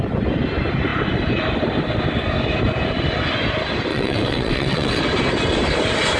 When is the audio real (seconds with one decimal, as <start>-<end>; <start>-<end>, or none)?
0.0-3.9; 5.0-6.2